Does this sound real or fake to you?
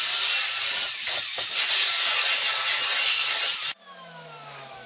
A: real